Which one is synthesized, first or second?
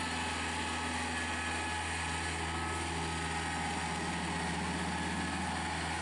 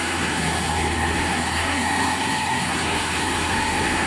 second